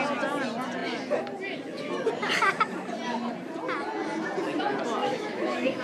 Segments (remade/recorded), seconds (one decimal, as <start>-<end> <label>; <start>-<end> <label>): 0.0-5.0 recorded; 5.0-5.8 remade

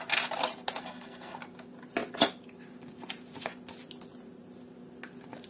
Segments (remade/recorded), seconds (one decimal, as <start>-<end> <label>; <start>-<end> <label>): 0.0-0.8 recorded; 0.8-1.4 remade; 1.4-5.5 recorded

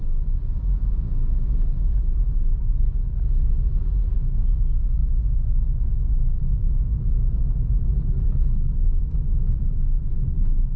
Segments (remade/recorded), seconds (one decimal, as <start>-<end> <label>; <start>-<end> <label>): 0.0-1.9 recorded; 1.9-3.5 remade; 3.5-8.0 recorded; 8.0-9.0 remade; 9.0-10.8 recorded

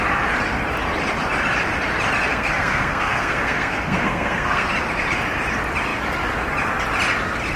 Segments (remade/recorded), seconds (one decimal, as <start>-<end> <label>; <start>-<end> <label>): 0.0-2.3 recorded; 2.3-4.7 remade; 4.7-7.6 recorded

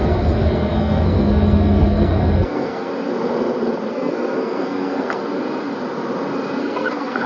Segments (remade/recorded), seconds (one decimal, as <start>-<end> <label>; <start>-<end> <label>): 0.0-2.9 remade; 2.9-3.9 recorded; 3.9-5.2 remade; 5.2-6.6 recorded; 6.6-7.3 remade

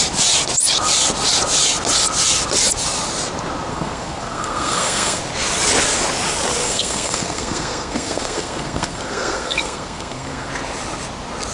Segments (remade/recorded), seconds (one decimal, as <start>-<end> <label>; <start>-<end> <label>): 0.0-3.7 recorded; 3.7-5.2 remade; 5.2-6.6 recorded; 6.6-10.5 remade; 10.5-11.5 recorded

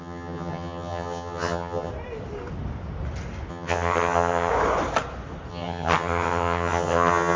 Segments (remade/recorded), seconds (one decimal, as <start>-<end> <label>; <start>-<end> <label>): 0.0-1.9 remade; 1.9-3.5 recorded; 3.5-4.5 remade; 4.5-5.5 recorded; 5.5-7.4 remade